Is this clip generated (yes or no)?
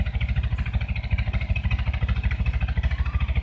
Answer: yes